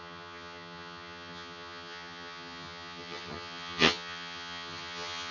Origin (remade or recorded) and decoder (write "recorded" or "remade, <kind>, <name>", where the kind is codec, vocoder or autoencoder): remade, vocoder, HiFi-GAN